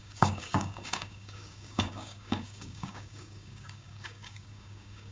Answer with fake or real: fake